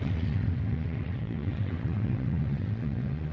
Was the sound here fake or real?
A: fake